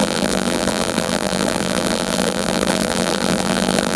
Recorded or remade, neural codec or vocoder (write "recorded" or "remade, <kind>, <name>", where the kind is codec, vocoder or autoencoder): remade, vocoder, BigVGAN v2